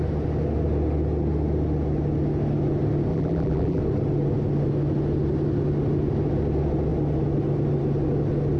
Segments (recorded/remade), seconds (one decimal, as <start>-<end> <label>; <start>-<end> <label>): 0.0-3.1 recorded; 3.1-3.8 remade; 3.8-8.6 recorded